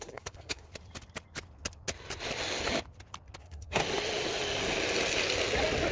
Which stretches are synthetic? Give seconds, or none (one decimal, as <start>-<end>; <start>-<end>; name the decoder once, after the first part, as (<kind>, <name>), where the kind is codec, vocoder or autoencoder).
0.0-0.7 (codec, SNAC); 3.4-3.8